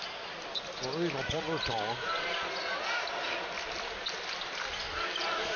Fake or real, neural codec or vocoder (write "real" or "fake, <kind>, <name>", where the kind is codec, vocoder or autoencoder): real